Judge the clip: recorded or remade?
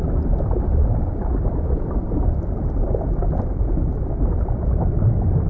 recorded